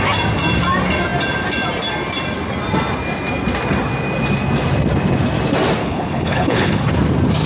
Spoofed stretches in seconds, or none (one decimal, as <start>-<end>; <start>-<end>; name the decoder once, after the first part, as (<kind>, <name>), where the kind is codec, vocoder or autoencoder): 5.8-6.9 (codec, HILCodec)